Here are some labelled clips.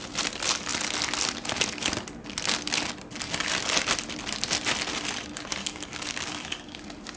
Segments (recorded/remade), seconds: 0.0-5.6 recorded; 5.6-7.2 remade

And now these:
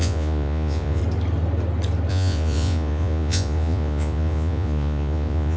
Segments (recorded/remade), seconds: 0.0-1.0 remade; 1.0-2.1 recorded; 2.1-5.6 remade

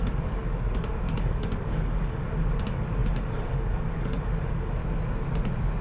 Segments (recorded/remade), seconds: 0.0-4.8 remade; 4.8-5.8 recorded

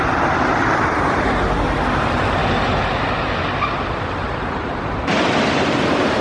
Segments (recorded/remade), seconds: 0.0-6.2 recorded

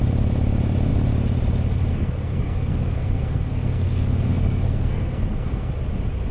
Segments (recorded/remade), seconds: 0.0-1.9 recorded; 1.9-5.7 remade; 5.7-6.3 recorded